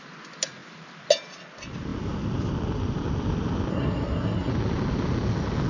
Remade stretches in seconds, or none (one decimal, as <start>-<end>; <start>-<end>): 3.7-4.5